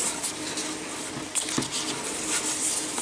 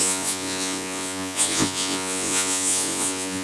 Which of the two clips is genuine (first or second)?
first